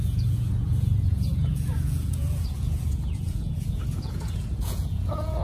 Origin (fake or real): fake